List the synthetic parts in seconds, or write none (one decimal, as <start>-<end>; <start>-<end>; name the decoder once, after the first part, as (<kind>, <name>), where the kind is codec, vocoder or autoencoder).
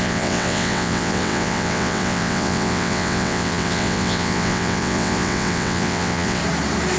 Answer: 0.0-6.4 (vocoder, WaveNeXt)